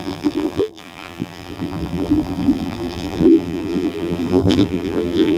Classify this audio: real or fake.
fake